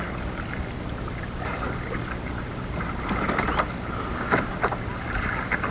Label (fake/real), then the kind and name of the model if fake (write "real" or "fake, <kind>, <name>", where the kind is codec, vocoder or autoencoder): real